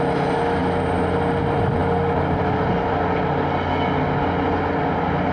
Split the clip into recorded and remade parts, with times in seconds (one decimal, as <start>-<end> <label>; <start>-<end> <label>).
0.0-5.3 recorded